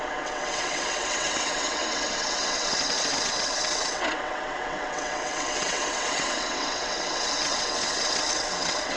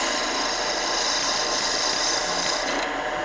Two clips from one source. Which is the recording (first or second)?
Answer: second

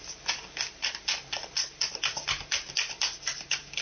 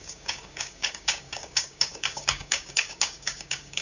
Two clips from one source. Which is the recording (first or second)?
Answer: first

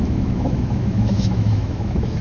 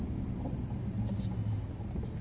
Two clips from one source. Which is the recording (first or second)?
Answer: second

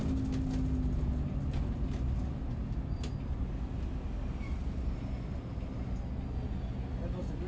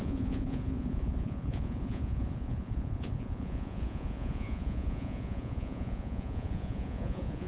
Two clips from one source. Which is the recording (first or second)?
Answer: first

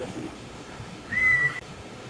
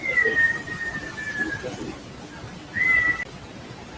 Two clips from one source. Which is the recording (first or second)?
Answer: second